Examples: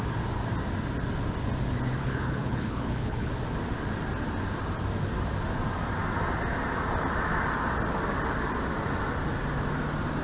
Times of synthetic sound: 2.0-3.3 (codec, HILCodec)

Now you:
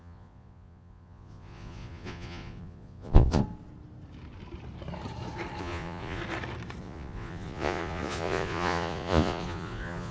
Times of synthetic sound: 0.0-3.4 (vocoder, Vocos); 5.6-6.2; 6.8-10.1

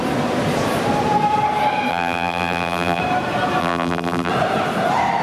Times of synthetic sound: 1.9-3.0 (vocoder, BigVGAN v2); 3.6-4.3

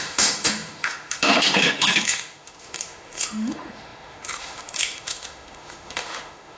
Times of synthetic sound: 0.0-6.6 (autoencoder, DAC-VAE)

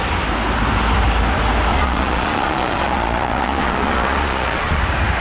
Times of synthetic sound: 1.7-4.8 (vocoder, Vocos)

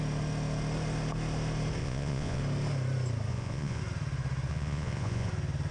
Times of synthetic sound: 1.8-2.4 (vocoder, Vocos); 3.3-3.8; 4.5-5.3

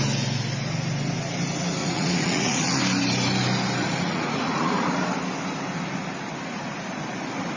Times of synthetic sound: 1.8-2.8 (vocoder, Vocos); 3.8-5.0